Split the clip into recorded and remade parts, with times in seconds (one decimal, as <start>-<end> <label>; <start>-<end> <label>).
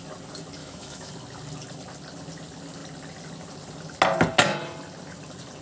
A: 0.0-0.6 recorded; 0.6-1.1 remade; 1.1-5.6 recorded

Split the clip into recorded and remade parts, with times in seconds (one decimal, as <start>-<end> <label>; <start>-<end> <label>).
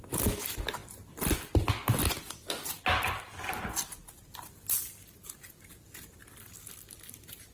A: 0.0-7.5 recorded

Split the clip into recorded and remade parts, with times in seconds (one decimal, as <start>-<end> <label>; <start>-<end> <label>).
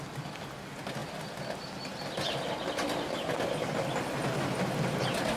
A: 0.0-5.4 recorded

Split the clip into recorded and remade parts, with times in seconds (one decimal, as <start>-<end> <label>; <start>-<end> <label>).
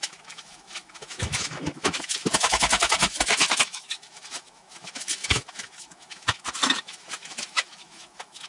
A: 0.0-8.5 remade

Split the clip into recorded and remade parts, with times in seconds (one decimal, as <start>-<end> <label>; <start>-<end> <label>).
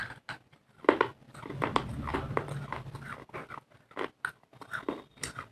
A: 0.0-5.5 recorded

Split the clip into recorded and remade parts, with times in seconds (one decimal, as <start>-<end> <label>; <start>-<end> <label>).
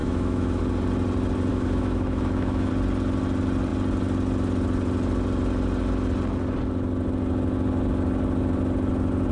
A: 0.0-0.6 remade; 0.6-1.5 recorded; 1.5-2.7 remade; 2.7-9.3 recorded